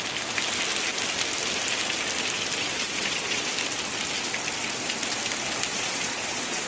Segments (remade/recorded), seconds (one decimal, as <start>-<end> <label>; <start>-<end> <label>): 0.0-2.6 recorded; 2.6-3.5 remade; 3.5-5.7 recorded; 5.7-6.7 remade